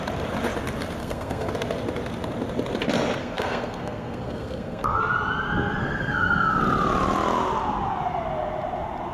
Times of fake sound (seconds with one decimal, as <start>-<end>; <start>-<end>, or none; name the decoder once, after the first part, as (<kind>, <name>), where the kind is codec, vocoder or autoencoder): 1.0-1.5 (codec, SNAC); 3.2-5.0; 5.8-6.6